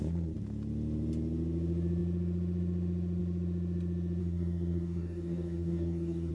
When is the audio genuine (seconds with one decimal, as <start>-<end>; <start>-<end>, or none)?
0.0-4.2